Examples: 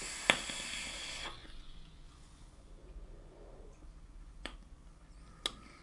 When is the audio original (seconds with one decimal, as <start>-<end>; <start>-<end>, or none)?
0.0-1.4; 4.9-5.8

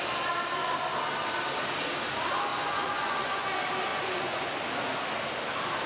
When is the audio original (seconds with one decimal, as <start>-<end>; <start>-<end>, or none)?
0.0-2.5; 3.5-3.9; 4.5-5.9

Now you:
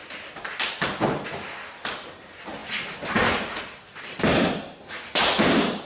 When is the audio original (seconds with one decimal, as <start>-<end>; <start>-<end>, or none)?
0.0-2.6; 4.5-5.9